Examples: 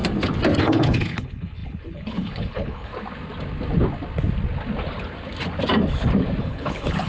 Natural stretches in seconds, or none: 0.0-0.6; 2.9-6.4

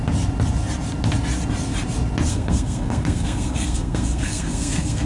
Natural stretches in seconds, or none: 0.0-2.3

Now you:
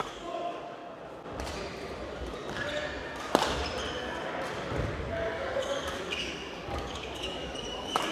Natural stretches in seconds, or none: 0.8-5.0

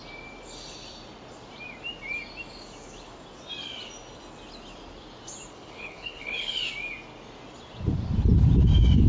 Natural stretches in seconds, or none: 0.0-5.5; 6.6-9.1